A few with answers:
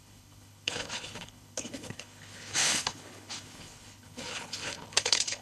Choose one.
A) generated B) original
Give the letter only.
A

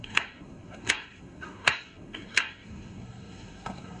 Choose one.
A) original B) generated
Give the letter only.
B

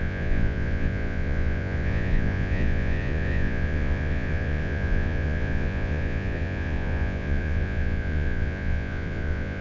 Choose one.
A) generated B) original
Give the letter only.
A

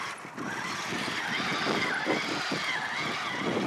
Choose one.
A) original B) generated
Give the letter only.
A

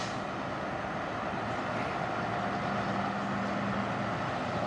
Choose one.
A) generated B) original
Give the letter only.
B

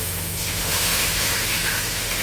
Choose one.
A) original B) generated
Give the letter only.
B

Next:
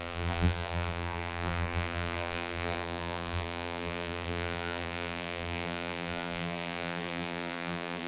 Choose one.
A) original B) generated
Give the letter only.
B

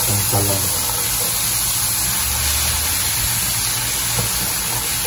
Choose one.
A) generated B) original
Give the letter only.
B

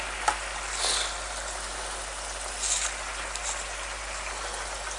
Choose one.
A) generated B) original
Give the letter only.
B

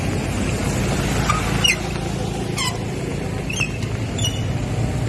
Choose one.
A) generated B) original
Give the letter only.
B